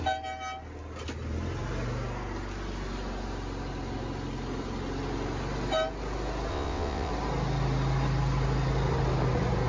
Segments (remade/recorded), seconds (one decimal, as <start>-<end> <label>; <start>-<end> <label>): 0.0-6.5 recorded; 6.5-7.1 remade; 7.1-9.7 recorded